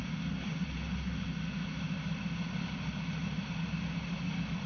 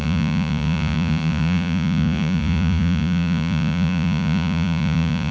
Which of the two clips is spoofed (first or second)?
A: second